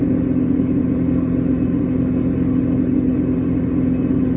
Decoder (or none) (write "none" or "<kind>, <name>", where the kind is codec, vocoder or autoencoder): none